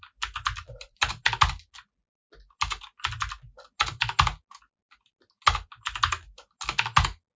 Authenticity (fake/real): real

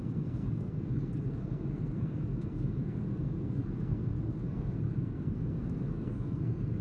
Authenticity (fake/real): fake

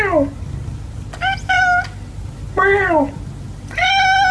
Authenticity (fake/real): real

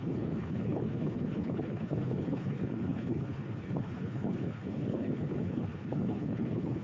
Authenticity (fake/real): fake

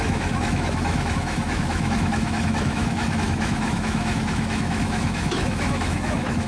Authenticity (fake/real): fake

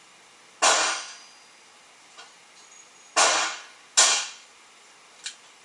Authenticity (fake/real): real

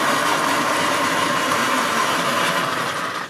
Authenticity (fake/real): real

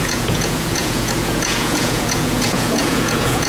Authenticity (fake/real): fake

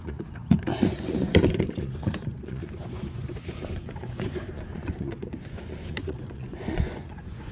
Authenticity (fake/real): fake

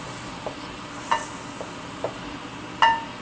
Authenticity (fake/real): real